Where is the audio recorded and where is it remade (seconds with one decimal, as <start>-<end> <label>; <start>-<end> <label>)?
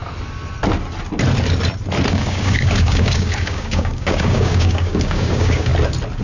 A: 0.0-2.1 recorded; 2.1-5.7 remade; 5.7-6.2 recorded